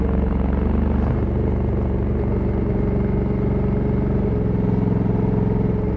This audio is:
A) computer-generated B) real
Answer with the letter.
B